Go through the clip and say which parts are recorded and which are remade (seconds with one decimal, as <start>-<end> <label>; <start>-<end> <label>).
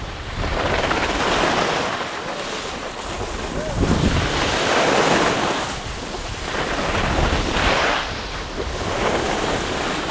0.0-10.1 recorded